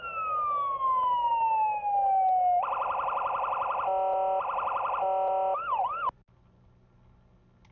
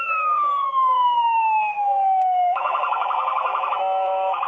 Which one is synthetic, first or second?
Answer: second